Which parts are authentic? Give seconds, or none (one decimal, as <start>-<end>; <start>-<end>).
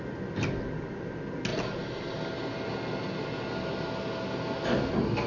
0.0-5.3